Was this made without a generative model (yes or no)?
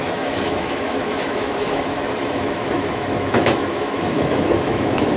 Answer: no